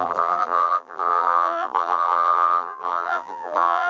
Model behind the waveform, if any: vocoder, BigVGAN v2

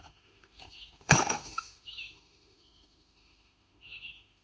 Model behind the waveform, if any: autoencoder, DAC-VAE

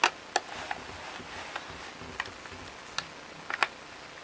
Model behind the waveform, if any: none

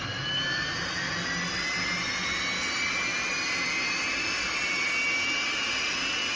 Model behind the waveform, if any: none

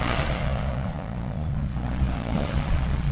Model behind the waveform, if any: vocoder, Vocos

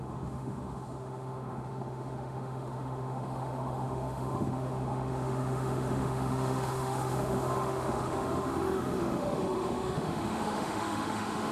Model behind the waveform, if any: autoencoder, DAC-VAE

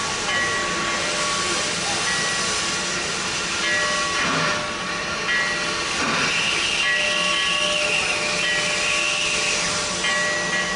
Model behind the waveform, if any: none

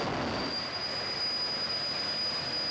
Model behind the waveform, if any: none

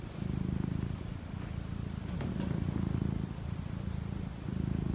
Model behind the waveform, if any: none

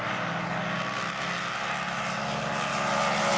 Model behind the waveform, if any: none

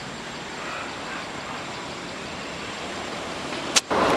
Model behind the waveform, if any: none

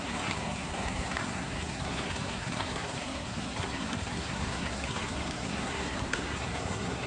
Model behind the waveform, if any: codec, SNAC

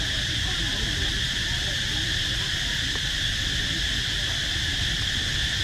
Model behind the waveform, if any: none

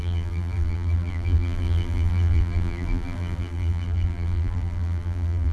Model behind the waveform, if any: vocoder, BigVGAN v2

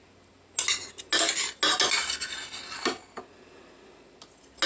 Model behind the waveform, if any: none